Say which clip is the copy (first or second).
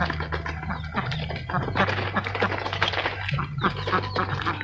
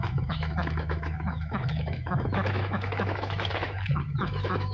second